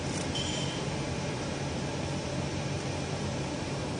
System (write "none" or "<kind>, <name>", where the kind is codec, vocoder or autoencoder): vocoder, BigVGAN v2